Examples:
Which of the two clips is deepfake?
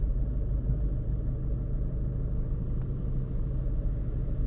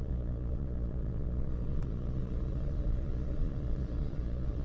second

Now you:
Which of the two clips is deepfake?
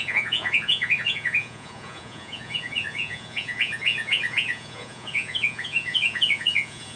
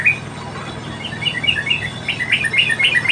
first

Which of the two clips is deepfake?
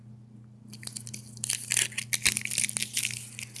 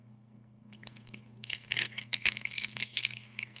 second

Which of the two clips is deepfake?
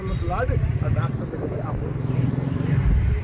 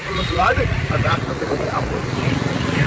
second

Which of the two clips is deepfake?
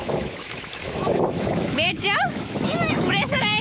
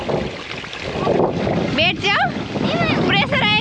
first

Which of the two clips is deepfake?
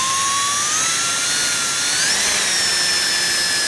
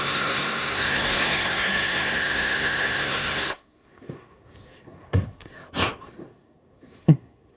second